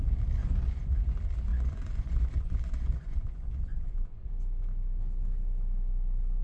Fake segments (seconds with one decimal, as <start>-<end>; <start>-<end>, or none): 0.4-1.0; 1.5-4.3